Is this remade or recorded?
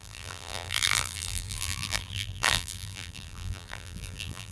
remade